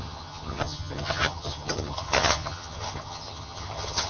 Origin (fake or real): fake